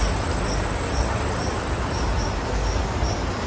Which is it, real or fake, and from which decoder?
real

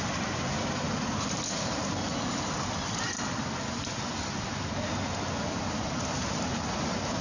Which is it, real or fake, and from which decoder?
real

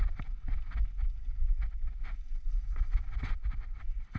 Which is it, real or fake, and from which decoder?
real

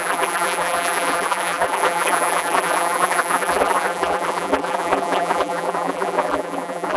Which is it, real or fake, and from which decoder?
fake, vocoder, BigVGAN v2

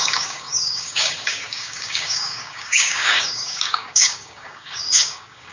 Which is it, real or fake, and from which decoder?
fake, codec, DAC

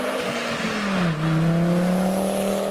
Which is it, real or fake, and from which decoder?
real